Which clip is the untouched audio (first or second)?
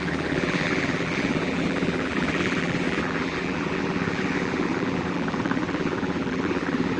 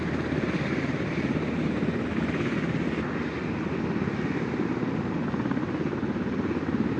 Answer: second